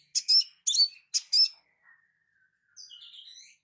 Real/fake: real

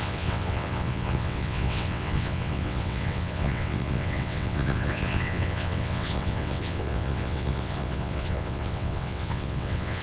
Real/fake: fake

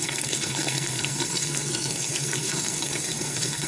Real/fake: fake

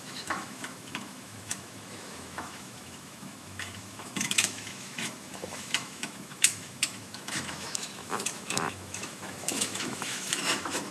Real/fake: fake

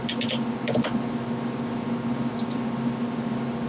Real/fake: real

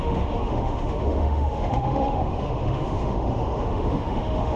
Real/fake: fake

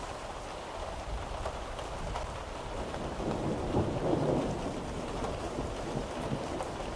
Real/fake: real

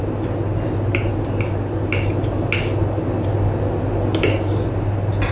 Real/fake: real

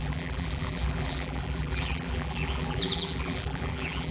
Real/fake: fake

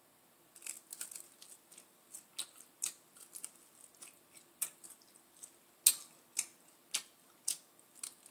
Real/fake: real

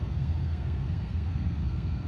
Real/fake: fake